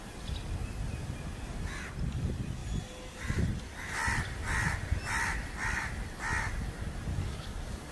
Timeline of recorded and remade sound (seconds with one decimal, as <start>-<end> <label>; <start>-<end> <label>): 0.0-7.1 recorded; 7.1-7.9 remade